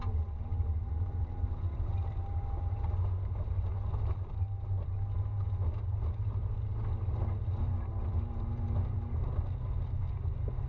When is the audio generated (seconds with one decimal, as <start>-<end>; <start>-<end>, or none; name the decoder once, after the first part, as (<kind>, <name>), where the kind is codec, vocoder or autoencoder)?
0.5-2.9 (vocoder, BigVGAN v2)